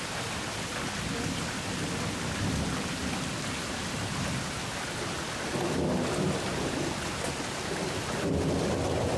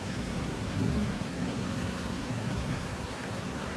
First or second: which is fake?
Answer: second